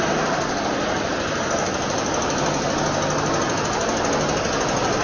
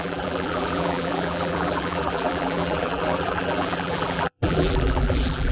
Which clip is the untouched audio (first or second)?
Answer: first